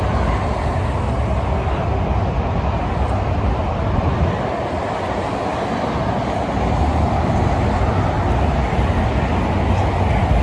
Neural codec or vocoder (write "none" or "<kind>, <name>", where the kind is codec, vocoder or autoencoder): none